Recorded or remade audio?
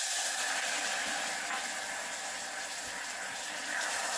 recorded